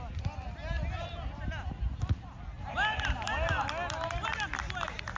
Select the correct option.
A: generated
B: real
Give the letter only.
B